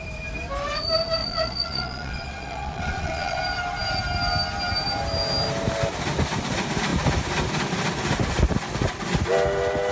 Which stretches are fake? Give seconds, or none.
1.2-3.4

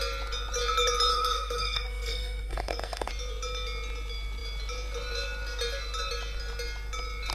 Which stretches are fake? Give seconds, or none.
1.1-3.1

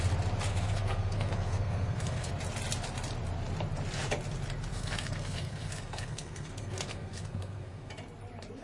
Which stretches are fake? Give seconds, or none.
0.5-2.3; 4.7-7.9

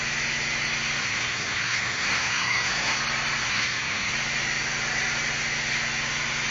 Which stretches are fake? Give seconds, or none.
1.0-3.0; 3.4-4.1